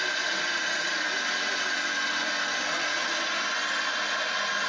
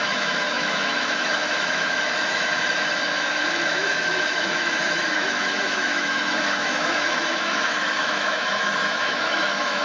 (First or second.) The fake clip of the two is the second